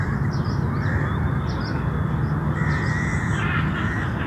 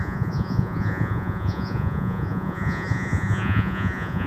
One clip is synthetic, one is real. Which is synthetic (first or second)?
second